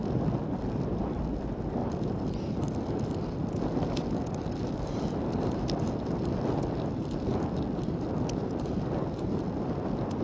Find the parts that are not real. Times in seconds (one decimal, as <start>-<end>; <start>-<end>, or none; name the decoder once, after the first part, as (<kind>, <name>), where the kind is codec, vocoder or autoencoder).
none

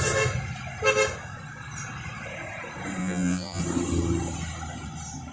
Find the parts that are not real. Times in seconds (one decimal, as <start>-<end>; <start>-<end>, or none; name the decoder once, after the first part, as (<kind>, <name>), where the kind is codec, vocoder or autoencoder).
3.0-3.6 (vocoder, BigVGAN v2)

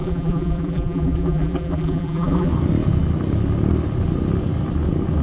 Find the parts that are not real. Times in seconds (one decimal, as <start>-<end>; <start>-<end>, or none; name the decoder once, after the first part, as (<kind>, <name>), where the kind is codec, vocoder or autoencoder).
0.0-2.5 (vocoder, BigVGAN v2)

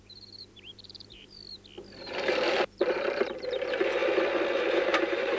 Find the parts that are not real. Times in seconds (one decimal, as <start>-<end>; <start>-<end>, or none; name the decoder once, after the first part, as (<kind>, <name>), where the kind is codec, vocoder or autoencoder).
0.0-1.4 (vocoder, BigVGAN v2); 2.0-4.0; 4.6-5.4